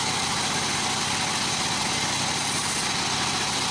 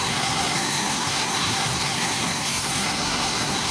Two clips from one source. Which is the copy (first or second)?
second